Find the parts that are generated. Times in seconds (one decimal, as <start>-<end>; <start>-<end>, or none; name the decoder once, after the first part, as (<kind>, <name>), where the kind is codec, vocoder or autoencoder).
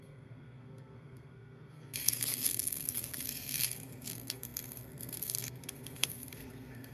0.0-6.9 (codec, SNAC)